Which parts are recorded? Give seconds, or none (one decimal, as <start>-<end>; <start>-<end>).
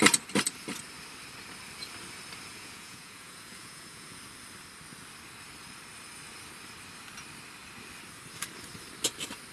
0.0-2.5; 4.2-9.5